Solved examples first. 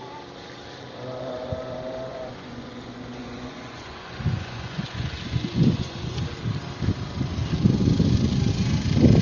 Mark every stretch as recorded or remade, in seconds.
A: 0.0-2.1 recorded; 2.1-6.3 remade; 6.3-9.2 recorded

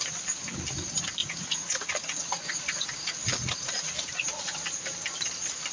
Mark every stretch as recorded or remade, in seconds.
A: 0.0-1.2 recorded; 1.2-4.6 remade; 4.6-5.7 recorded

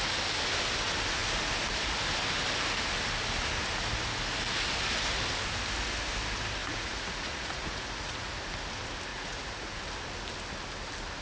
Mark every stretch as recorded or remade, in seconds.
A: 0.0-6.6 recorded; 6.6-8.3 remade; 8.3-9.1 recorded; 9.1-9.8 remade; 9.8-11.2 recorded

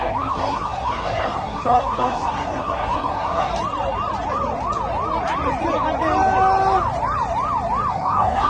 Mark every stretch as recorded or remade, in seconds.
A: 0.0-3.5 remade; 3.5-7.9 recorded; 7.9-8.5 remade

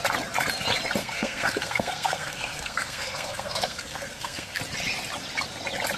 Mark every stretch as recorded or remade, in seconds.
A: 0.0-1.0 recorded; 1.0-4.6 remade; 4.6-6.0 recorded

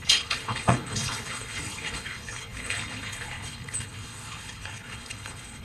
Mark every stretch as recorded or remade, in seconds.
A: 0.0-5.6 remade

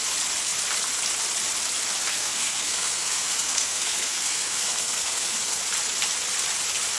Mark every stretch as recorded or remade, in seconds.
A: 0.0-2.1 recorded; 2.1-5.6 remade; 5.6-7.0 recorded